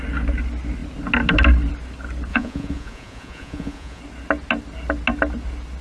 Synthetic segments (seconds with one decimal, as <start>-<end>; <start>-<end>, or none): 2.3-4.0